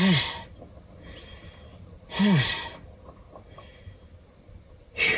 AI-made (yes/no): no